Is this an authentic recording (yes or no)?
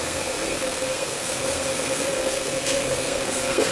no